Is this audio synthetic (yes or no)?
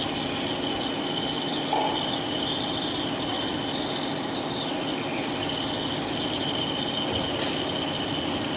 no